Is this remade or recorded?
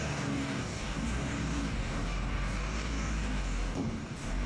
remade